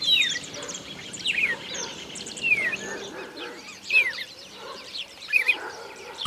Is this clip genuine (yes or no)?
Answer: no